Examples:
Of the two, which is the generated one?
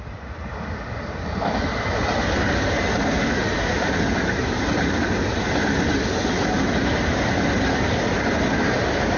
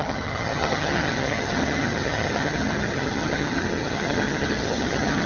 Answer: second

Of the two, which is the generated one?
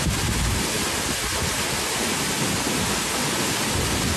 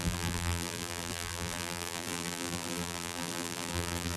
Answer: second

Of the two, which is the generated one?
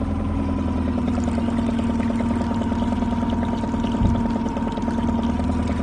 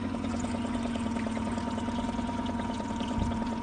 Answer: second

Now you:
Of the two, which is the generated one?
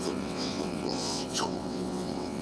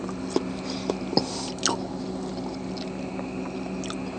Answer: first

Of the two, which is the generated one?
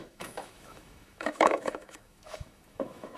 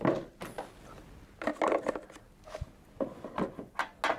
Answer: first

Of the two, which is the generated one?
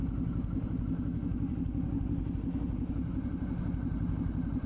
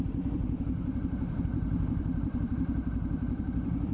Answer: second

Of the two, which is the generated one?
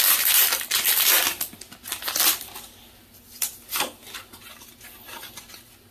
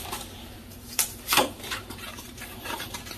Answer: second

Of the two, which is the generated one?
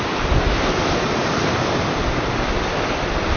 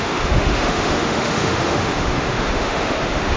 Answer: second